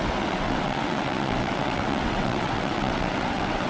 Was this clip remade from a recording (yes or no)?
yes